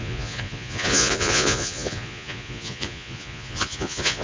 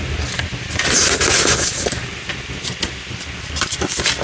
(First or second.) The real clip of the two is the second